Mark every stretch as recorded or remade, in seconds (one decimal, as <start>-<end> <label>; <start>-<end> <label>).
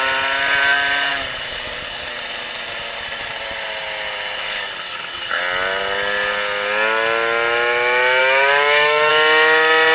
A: 0.0-1.1 recorded; 1.1-2.1 remade; 2.1-4.4 recorded; 4.4-5.4 remade; 5.4-8.2 recorded; 8.2-9.1 remade; 9.1-9.9 recorded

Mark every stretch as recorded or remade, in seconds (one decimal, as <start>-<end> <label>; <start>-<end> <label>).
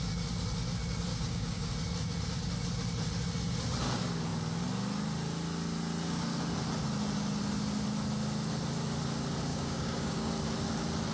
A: 0.0-1.1 recorded; 1.1-1.7 remade; 1.7-9.5 recorded; 9.5-10.3 remade; 10.3-11.1 recorded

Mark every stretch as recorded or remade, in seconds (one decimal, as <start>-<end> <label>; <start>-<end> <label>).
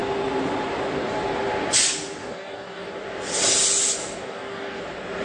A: 0.0-2.2 recorded; 2.2-2.9 remade; 2.9-4.0 recorded; 4.0-4.8 remade; 4.8-5.2 recorded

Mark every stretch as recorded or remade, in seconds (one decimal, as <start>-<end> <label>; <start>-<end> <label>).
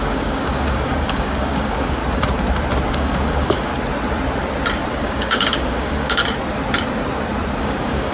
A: 0.0-2.0 remade; 2.0-2.9 recorded; 2.9-3.7 remade; 3.7-4.9 recorded; 4.9-6.2 remade; 6.2-7.6 recorded; 7.6-8.1 remade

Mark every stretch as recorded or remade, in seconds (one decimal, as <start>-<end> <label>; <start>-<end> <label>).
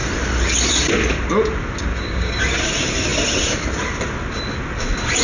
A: 0.0-1.9 recorded; 1.9-2.4 remade; 2.4-5.2 recorded